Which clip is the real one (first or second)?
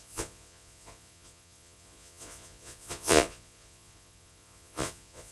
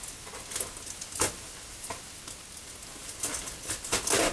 second